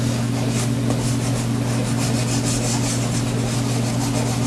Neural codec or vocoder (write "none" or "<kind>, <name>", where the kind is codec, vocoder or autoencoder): none